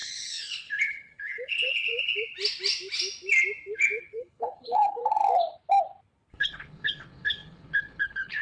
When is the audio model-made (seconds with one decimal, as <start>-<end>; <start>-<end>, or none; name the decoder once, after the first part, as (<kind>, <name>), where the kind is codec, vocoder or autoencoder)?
0.0-1.9 (codec, HILCodec); 4.0-5.0; 6.3-8.4